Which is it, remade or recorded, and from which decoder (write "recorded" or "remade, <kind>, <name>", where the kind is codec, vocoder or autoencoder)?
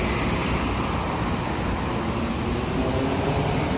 recorded